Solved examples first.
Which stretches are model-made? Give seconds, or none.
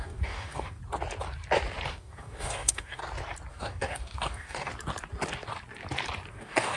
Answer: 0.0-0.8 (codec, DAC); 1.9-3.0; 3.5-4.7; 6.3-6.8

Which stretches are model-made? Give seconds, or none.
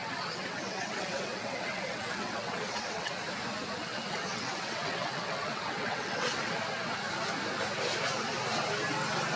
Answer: 0.0-3.1 (vocoder, WaveNeXt); 3.9-6.5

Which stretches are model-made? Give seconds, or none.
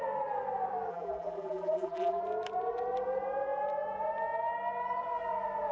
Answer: 0.9-2.2 (vocoder, BigVGAN v2)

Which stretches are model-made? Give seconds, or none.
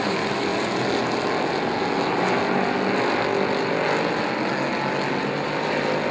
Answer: none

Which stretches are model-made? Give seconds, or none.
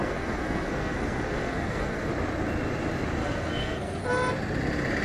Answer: 0.0-2.1 (codec, SNAC); 3.2-4.0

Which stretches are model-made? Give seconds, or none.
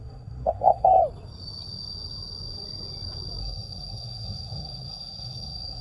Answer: 0.0-1.0 (codec, SNAC); 3.4-5.8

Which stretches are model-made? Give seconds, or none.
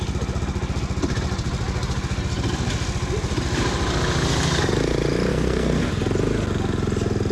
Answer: 5.3-5.9 (codec, SNAC)